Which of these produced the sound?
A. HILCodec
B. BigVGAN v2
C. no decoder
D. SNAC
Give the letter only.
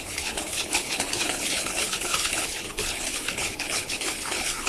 A